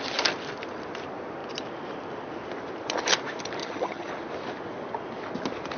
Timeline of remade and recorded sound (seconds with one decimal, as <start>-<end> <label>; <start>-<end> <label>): 0.0-3.6 recorded; 3.6-4.1 remade; 4.1-5.8 recorded